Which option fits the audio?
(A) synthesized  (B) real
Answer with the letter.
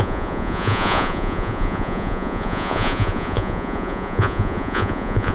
A